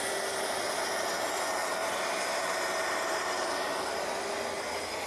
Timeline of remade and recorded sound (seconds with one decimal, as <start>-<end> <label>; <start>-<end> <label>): 0.0-1.8 recorded; 1.8-4.1 remade; 4.1-5.1 recorded